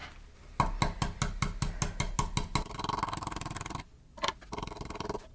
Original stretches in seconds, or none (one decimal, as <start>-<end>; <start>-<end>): 0.0-5.3